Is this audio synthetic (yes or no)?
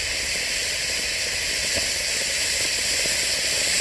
yes